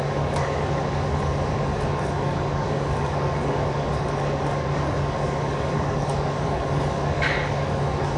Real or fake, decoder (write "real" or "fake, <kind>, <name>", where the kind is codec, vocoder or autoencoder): fake, codec, DAC